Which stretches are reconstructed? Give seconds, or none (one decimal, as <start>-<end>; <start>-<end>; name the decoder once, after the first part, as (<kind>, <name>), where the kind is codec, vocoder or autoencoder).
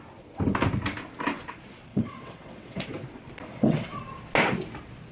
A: 1.9-2.9 (vocoder, WaveNeXt); 3.5-4.0